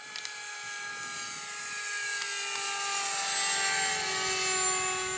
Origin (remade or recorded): recorded